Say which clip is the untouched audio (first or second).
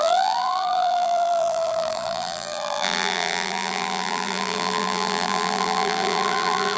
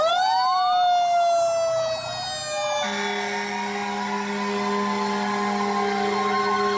second